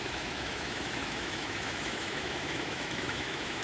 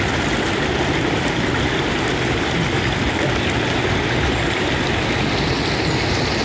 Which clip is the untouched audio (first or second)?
second